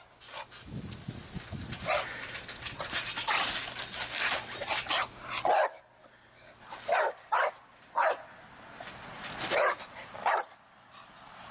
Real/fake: real